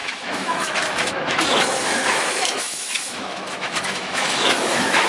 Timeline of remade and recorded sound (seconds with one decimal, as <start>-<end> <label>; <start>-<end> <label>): 0.0-1.4 remade; 1.4-1.9 recorded; 1.9-5.1 remade